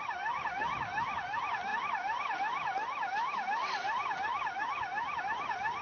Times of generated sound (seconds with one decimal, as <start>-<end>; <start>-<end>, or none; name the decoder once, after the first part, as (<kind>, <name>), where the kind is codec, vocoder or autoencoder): none